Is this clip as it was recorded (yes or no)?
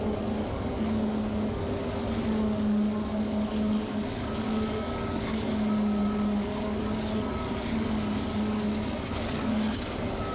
no